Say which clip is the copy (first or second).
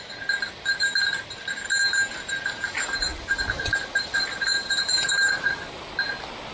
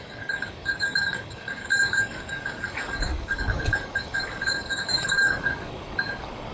second